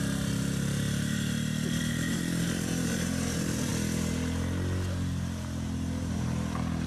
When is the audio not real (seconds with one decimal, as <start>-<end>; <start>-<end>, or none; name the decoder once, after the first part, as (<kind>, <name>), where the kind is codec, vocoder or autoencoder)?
0.0-3.7 (vocoder, BigVGAN v2)